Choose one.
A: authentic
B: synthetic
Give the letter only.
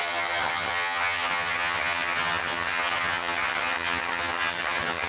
B